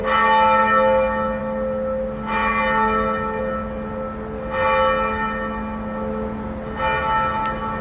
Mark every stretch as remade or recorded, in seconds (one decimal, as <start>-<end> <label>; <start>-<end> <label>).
0.0-7.8 recorded